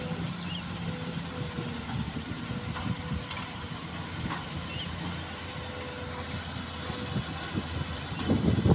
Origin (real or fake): real